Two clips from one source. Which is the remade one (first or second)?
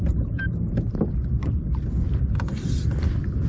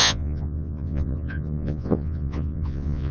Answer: second